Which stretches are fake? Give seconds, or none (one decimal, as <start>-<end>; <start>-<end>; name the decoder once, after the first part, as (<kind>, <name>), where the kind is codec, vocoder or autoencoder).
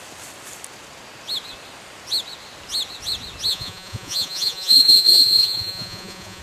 3.5-6.4 (vocoder, Vocos)